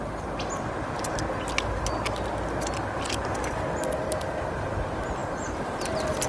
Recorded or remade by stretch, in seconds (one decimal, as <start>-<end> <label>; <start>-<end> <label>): 0.0-6.3 recorded